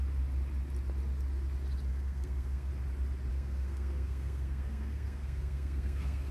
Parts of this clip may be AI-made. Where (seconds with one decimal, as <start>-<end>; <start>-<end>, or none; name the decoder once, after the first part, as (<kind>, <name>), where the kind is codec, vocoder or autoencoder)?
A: 1.9-2.7 (codec, SNAC); 3.3-6.3